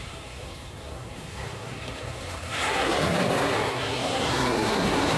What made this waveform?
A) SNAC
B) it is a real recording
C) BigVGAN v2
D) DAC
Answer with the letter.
A